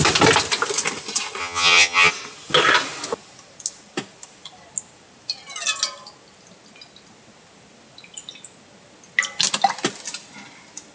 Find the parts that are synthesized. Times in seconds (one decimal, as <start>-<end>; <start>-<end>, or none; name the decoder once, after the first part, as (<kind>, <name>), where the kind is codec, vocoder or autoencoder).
1.4-2.1 (vocoder, HiFi-GAN)